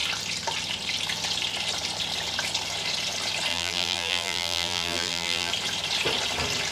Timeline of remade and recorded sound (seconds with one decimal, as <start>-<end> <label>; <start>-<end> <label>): 0.0-3.5 recorded; 3.5-5.5 remade; 5.5-6.7 recorded